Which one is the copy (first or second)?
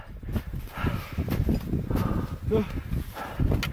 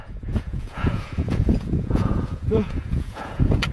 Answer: second